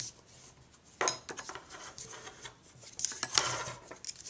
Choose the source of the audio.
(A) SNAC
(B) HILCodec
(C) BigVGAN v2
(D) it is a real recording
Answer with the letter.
D